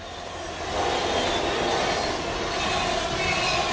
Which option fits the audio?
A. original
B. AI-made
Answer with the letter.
A